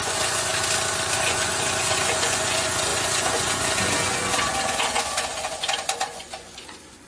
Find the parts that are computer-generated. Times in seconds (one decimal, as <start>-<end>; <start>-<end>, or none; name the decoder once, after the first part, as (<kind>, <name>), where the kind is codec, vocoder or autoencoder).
0.0-0.5 (vocoder, Vocos); 1.2-7.1